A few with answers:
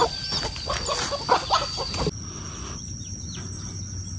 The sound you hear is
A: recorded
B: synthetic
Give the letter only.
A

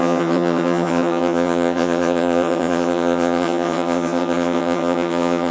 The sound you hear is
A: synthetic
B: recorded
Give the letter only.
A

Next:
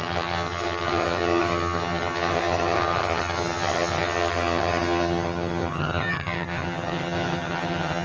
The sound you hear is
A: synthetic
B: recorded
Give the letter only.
A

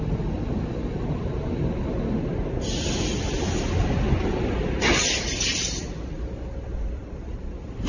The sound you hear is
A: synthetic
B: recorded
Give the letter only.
B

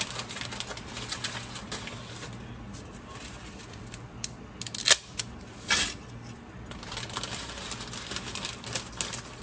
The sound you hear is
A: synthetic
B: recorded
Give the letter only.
B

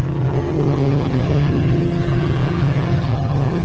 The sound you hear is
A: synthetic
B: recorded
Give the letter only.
A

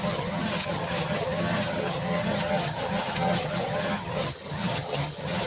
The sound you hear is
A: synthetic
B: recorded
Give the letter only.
A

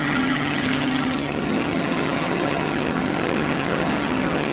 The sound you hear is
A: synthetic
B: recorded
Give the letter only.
A